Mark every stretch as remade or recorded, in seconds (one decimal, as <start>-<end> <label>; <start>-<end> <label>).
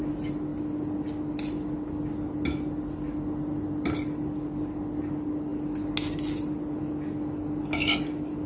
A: 0.0-8.5 recorded